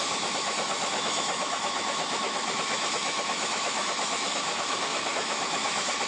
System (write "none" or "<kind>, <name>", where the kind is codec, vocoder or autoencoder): autoencoder, DAC-VAE